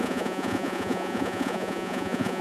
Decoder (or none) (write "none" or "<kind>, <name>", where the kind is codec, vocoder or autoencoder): vocoder, Vocos